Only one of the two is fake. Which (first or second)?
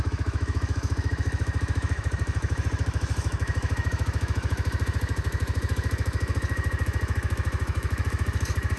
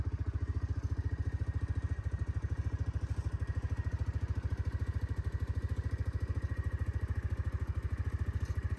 first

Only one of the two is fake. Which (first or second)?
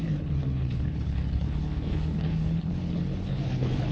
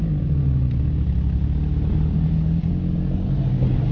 first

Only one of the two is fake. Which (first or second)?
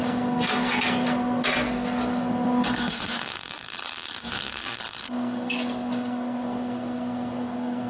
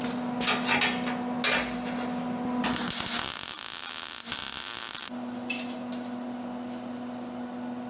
first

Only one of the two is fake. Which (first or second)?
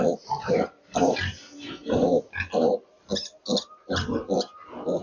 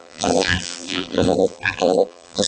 second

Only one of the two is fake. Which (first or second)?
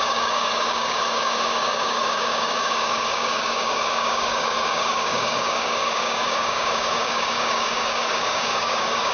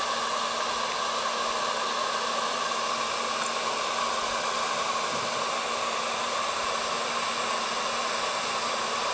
first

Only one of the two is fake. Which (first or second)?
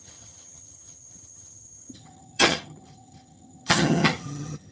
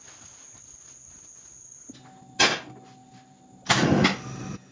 first